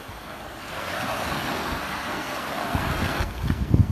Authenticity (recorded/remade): remade